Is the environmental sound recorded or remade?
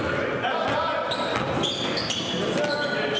recorded